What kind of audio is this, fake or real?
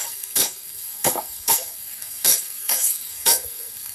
fake